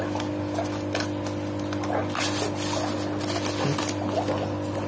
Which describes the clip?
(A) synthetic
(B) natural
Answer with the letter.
B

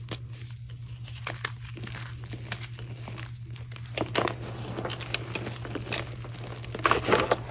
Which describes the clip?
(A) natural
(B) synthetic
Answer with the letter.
A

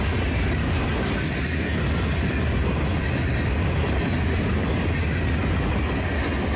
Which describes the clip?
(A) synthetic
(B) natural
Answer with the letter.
B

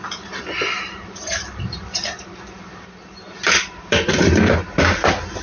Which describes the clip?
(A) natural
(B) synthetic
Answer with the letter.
B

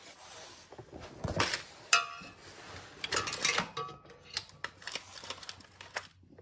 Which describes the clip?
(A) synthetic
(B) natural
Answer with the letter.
B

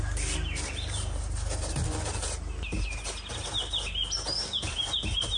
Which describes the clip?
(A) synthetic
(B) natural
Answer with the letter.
B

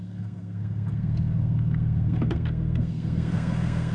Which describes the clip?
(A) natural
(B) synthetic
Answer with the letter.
B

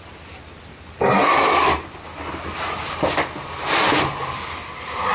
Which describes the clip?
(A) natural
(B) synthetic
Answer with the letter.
A